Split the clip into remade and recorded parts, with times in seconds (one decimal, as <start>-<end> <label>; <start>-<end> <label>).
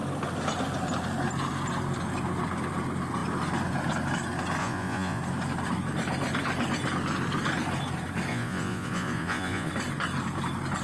0.0-4.6 recorded; 4.6-5.2 remade; 5.2-8.3 recorded; 8.3-9.7 remade; 9.7-10.8 recorded